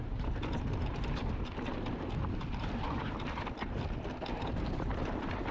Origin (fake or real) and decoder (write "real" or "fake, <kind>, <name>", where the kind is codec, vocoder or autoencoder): real